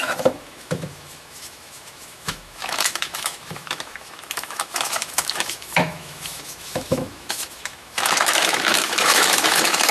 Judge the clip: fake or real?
fake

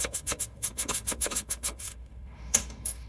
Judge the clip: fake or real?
fake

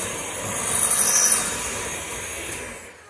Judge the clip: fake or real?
real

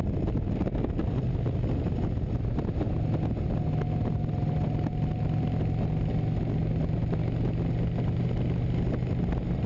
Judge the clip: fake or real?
real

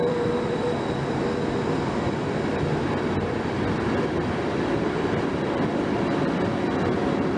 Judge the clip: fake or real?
fake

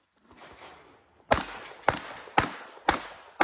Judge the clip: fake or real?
real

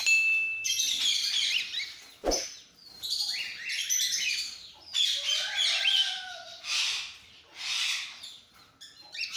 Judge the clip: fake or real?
real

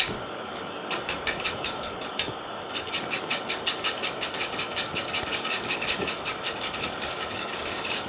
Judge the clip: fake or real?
fake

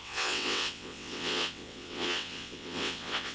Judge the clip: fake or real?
fake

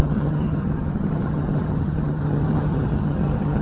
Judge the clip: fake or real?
fake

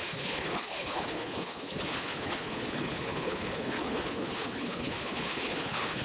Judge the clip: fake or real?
fake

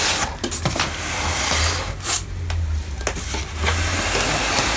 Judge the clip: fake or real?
real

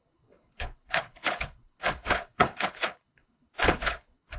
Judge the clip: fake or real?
fake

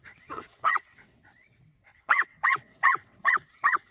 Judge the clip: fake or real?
fake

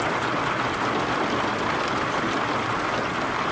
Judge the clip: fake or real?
real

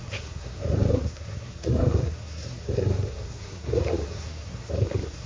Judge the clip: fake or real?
fake